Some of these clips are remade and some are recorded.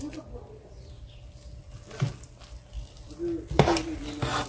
recorded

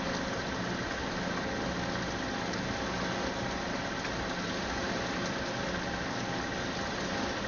recorded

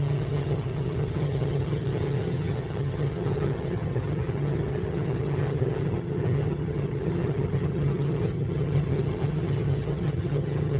remade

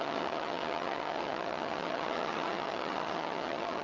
remade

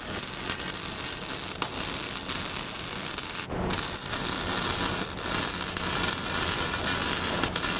recorded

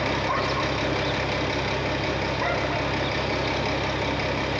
recorded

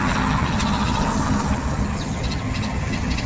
remade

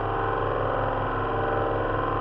recorded